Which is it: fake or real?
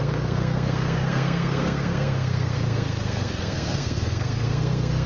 fake